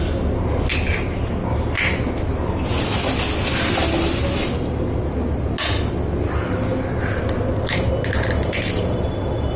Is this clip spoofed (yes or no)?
no